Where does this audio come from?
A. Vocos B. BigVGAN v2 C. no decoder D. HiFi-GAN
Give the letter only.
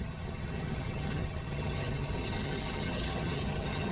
D